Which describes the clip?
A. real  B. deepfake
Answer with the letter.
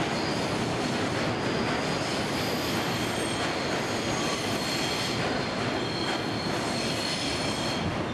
A